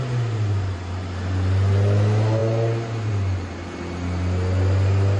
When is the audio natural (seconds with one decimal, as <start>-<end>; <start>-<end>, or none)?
0.0-5.2

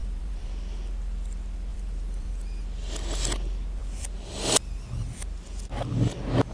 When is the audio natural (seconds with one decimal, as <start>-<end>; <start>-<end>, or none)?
0.5-1.7; 2.3-6.5

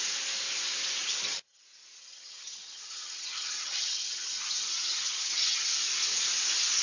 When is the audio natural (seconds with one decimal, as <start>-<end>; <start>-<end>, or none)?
0.0-1.0; 1.6-2.0; 5.6-6.8

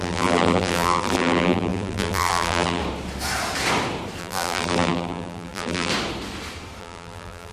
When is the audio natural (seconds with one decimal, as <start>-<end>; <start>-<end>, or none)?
2.8-4.2; 5.9-6.8